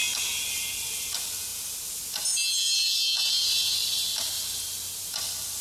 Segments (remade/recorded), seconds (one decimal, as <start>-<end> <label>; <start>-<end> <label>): 0.0-5.6 recorded